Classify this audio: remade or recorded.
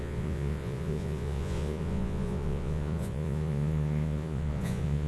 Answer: remade